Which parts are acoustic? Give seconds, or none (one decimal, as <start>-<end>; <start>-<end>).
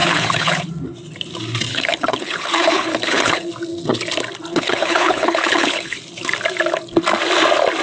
0.7-1.7; 3.5-4.5; 6.0-7.8